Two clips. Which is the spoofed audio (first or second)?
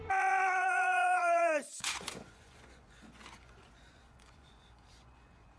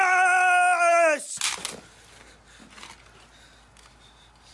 first